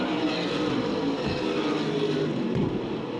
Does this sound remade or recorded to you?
recorded